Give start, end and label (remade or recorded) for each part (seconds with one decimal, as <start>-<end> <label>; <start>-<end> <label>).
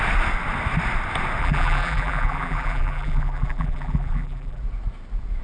0.0-1.4 recorded; 1.4-4.6 remade; 4.6-5.4 recorded